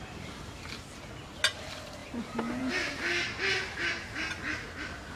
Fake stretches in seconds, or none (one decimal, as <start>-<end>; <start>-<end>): none